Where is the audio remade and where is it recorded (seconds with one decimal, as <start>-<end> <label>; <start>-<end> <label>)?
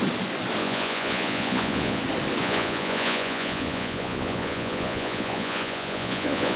0.0-0.6 recorded; 0.6-2.0 remade; 2.0-2.4 recorded; 2.4-6.6 remade